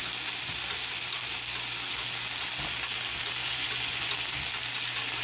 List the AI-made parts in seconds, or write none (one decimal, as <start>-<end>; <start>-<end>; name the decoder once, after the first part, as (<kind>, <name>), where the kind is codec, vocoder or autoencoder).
3.4-4.1 (vocoder, Vocos)